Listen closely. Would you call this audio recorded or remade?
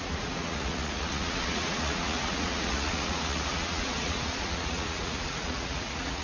remade